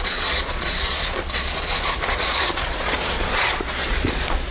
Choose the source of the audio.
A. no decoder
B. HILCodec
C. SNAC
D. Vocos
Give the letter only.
D